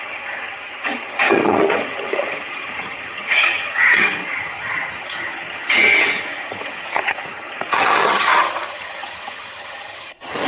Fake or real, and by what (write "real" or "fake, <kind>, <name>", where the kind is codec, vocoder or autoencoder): fake, vocoder, HiFi-GAN